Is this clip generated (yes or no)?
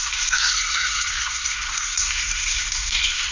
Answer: yes